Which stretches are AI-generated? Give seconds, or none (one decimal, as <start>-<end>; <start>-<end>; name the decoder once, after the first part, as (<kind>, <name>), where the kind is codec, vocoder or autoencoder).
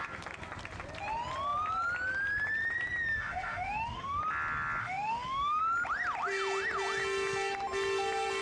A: 3.1-4.2 (autoencoder, DAC-VAE); 4.8-5.6